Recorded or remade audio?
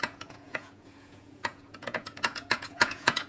remade